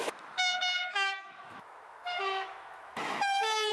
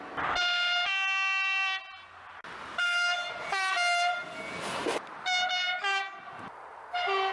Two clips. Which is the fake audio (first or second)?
first